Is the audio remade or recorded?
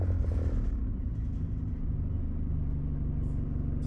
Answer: recorded